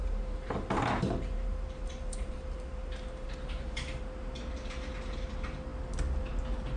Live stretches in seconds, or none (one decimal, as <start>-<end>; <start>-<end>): 4.0-6.8